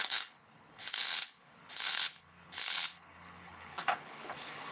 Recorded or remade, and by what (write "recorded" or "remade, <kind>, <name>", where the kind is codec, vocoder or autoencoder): remade, codec, HILCodec